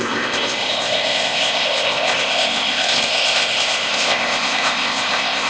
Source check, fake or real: fake